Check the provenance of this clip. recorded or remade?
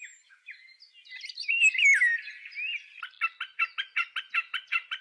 recorded